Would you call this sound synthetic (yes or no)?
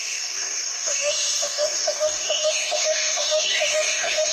yes